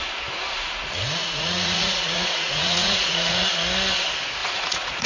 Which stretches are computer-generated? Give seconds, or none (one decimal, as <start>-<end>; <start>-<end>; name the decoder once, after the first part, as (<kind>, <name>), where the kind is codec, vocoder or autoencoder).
1.2-3.5 (vocoder, Vocos); 4.4-5.1